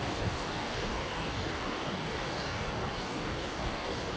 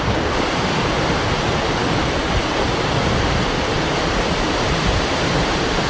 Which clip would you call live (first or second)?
second